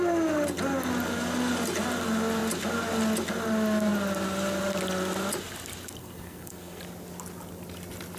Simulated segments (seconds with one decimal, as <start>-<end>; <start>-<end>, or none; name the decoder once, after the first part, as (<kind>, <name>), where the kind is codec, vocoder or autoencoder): 6.0-6.8 (codec, SNAC)